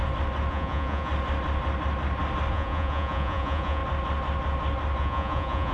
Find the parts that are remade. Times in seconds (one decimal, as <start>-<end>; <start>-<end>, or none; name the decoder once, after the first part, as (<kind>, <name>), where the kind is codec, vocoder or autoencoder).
0.5-1.1 (vocoder, Vocos); 2.5-3.8; 5.0-5.7